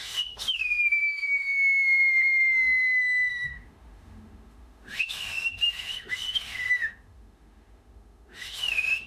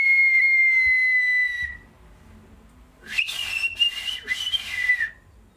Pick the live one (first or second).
second